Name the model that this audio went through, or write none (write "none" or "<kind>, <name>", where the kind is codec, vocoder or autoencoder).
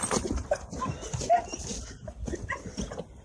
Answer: none